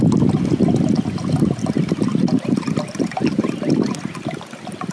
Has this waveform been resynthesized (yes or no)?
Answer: no